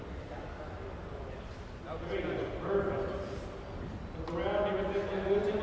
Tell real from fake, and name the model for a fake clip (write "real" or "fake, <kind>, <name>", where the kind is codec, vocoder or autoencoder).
real